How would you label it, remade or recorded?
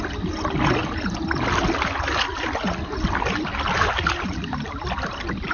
recorded